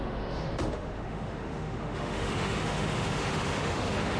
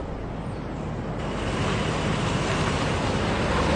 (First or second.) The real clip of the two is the second